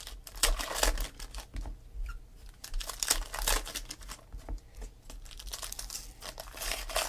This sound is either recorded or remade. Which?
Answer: recorded